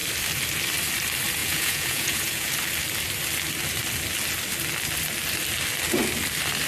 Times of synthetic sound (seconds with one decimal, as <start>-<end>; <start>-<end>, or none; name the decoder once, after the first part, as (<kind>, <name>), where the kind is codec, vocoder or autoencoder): 1.4-2.5 (vocoder, Vocos)